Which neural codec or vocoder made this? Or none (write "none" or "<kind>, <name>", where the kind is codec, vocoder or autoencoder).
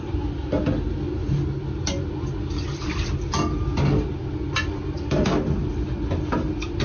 none